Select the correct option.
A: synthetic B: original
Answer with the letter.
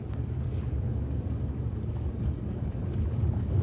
A